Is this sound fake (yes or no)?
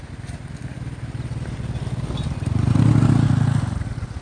no